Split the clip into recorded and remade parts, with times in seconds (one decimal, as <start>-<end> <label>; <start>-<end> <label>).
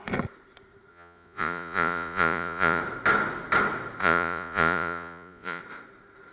0.0-0.9 recorded; 0.9-2.8 remade; 2.8-4.0 recorded; 4.0-5.6 remade; 5.6-6.3 recorded